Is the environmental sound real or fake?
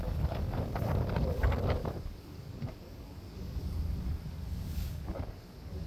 fake